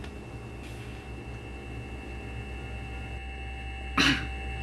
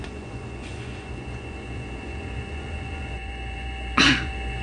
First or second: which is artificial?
second